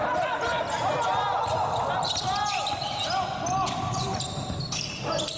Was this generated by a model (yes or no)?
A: no